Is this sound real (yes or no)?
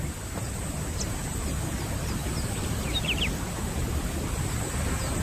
yes